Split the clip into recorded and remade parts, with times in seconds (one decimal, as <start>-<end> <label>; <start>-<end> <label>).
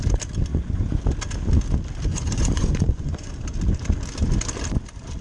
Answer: 0.0-0.5 recorded; 0.5-1.0 remade; 1.0-2.1 recorded; 2.1-3.3 remade; 3.3-5.2 recorded